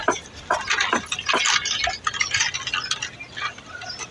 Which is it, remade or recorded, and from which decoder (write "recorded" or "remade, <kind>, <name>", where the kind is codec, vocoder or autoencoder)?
recorded